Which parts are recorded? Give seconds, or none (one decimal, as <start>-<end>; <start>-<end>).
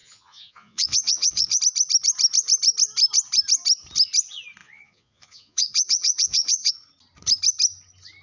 1.6-4.6; 6.7-8.2